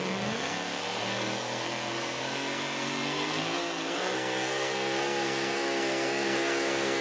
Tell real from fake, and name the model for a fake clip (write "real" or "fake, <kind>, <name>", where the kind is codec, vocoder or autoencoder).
fake, codec, SNAC